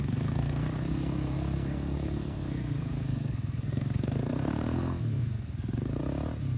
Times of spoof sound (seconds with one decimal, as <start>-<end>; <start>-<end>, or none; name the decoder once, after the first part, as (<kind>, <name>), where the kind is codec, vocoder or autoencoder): 0.0-6.0 (codec, SNAC)